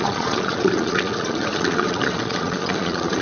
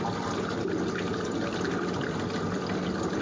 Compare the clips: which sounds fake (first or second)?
first